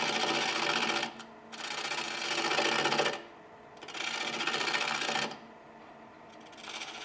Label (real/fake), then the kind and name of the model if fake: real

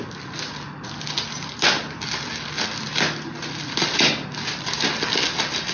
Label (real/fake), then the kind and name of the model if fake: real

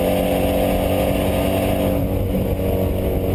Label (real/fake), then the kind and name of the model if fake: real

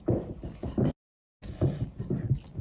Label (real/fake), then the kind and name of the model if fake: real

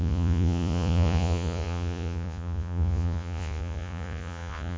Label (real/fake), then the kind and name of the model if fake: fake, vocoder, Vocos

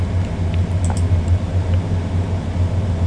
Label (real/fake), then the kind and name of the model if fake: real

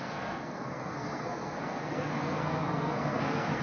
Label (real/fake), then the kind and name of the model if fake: fake, codec, SNAC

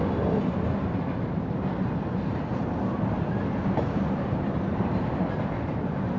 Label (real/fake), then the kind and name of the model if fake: real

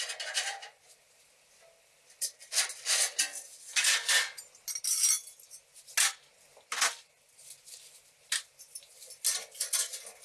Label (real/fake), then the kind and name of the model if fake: real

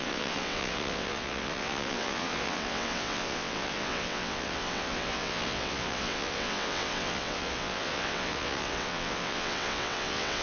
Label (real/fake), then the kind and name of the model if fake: fake, vocoder, WaveNeXt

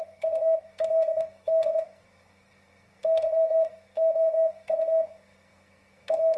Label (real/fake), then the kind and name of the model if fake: fake, codec, SNAC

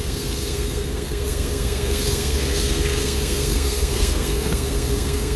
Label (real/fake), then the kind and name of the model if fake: fake, codec, SNAC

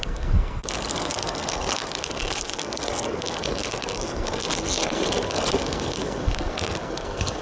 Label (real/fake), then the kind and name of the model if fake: fake, codec, SNAC